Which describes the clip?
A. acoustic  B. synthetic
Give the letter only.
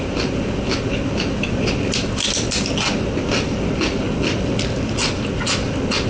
A